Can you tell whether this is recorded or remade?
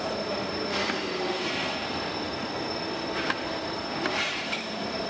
remade